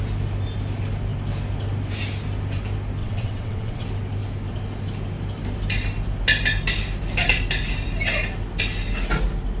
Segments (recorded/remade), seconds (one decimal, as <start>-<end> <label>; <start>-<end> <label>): 0.0-3.0 recorded; 3.0-3.8 remade; 3.8-9.6 recorded